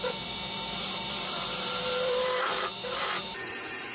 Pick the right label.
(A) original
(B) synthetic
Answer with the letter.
B